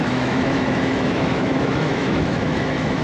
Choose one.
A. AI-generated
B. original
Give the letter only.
A